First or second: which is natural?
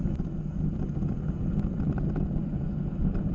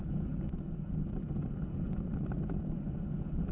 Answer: first